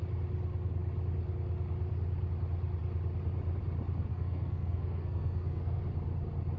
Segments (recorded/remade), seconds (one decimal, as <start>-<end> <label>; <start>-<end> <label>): 0.0-4.1 recorded; 4.1-5.8 remade; 5.8-6.6 recorded